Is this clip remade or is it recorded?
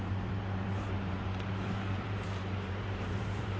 remade